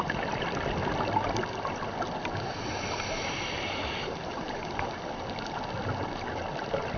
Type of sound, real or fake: real